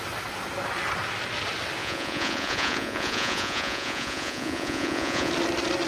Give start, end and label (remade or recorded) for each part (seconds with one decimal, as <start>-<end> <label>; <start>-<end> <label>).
0.0-1.8 recorded; 1.8-5.3 remade; 5.3-5.9 recorded